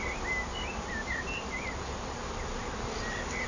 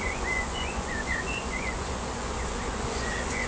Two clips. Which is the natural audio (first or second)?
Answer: first